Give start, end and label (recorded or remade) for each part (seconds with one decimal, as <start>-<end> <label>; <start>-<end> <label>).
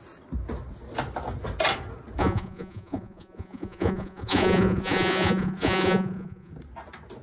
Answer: 0.0-2.2 recorded; 2.2-6.5 remade; 6.5-7.2 recorded